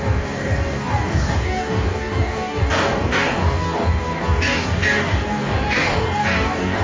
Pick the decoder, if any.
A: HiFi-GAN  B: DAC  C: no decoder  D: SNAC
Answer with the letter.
B